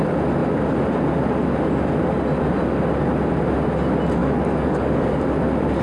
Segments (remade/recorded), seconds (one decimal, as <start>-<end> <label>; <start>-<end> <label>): 0.0-4.2 recorded; 4.2-5.2 remade; 5.2-5.8 recorded